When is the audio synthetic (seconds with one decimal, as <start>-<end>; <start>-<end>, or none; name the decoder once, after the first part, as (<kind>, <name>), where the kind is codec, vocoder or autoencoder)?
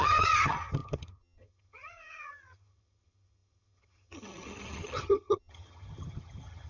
0.0-6.7 (vocoder, HiFi-GAN)